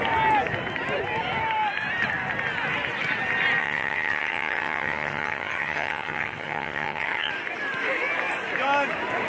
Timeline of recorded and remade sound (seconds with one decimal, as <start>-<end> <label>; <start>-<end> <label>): 0.0-3.6 recorded; 3.6-7.3 remade; 7.3-9.3 recorded